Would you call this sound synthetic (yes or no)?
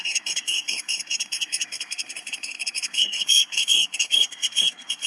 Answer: yes